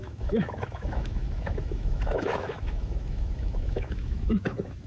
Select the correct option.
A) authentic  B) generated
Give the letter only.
B